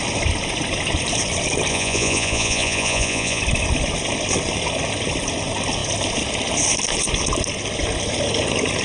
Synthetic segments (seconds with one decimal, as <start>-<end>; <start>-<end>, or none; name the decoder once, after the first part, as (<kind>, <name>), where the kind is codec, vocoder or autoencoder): 1.7-3.4 (vocoder, Vocos)